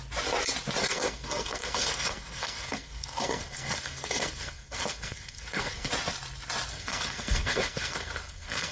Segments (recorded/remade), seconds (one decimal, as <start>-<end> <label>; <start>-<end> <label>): 0.0-0.8 recorded; 0.8-5.9 remade; 5.9-6.7 recorded; 6.7-8.7 remade